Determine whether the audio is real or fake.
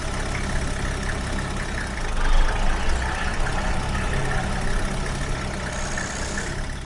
real